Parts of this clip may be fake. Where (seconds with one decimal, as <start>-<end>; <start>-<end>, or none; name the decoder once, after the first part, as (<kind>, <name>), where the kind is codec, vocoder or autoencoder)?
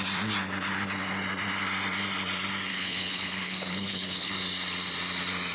2.7-4.3 (codec, HILCodec)